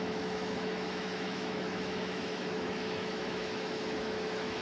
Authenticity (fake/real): fake